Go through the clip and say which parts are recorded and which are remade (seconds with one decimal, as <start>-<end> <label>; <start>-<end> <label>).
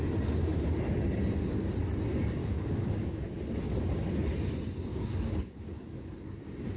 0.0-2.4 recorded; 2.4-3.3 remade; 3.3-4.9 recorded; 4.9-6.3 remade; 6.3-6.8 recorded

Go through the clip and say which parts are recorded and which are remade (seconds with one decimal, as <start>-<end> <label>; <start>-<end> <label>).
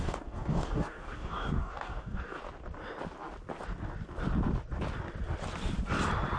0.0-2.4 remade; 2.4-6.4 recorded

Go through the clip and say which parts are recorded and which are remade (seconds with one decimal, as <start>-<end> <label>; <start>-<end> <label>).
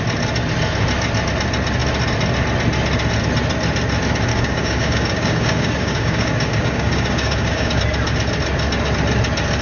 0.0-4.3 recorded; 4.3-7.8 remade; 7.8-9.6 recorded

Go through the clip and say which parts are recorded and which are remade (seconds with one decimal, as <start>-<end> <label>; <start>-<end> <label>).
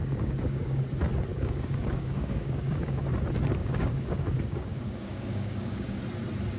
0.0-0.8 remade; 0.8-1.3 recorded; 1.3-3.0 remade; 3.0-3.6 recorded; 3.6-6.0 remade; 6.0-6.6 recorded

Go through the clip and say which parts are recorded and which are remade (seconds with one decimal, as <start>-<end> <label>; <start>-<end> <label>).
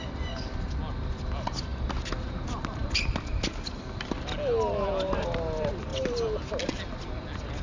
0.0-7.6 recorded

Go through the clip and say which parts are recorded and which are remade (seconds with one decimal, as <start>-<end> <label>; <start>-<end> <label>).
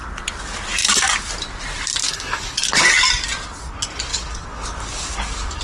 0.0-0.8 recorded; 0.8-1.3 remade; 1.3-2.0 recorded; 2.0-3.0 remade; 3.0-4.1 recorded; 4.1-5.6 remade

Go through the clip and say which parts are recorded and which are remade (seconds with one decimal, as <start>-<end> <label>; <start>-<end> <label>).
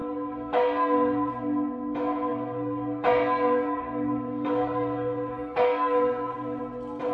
0.0-1.3 remade; 1.3-2.3 recorded; 2.3-6.6 remade; 6.6-7.1 recorded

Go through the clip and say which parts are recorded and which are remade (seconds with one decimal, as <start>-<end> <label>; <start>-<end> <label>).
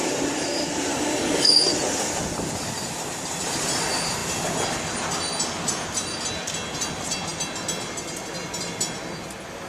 0.0-0.9 recorded; 0.9-1.5 remade; 1.5-9.7 recorded